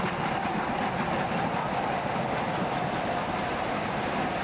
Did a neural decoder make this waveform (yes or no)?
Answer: no